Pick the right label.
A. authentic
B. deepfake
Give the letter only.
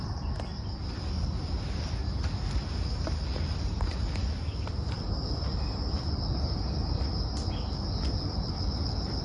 A